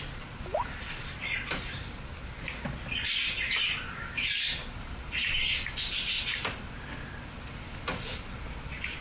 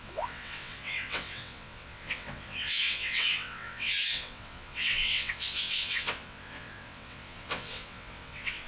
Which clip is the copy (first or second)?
second